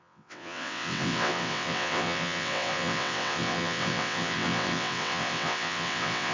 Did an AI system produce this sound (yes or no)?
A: yes